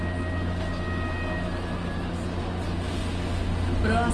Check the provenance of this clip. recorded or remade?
recorded